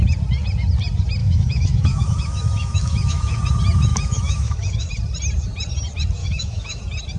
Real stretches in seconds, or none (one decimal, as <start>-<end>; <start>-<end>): 0.0-1.2; 3.4-3.9; 4.9-6.2; 6.8-7.2